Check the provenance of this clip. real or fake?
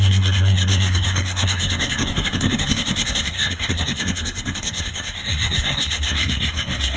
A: fake